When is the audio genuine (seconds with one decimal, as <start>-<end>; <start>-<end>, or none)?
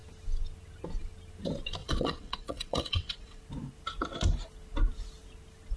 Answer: 0.0-1.8; 3.4-5.8